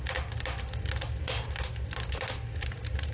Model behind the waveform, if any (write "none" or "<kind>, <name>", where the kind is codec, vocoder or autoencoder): none